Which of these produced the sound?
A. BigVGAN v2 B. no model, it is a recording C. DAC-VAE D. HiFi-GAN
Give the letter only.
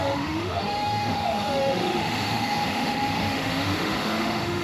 C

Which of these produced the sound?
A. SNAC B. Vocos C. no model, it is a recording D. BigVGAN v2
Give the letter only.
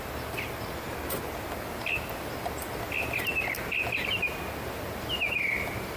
C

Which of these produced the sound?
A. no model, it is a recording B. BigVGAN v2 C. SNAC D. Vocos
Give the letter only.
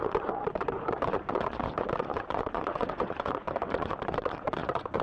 D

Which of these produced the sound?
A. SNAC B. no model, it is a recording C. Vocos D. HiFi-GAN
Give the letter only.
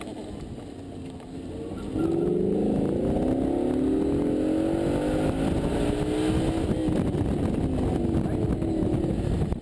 B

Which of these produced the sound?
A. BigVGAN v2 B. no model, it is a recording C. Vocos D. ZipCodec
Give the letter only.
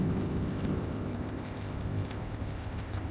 D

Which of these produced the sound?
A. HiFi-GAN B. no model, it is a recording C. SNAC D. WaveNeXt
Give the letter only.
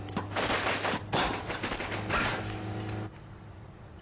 B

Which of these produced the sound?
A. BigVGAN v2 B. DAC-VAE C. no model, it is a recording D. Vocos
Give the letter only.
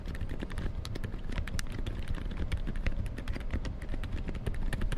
A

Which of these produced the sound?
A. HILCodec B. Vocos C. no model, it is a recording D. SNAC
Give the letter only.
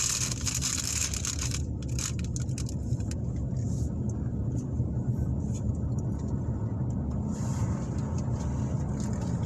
C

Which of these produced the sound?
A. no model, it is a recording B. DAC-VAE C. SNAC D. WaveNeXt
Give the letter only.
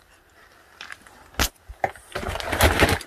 A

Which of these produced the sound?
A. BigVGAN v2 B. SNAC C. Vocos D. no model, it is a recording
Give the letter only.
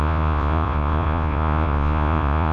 C